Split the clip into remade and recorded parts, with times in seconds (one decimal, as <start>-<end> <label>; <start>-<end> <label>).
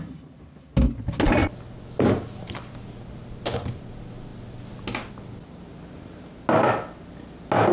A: 0.0-7.7 recorded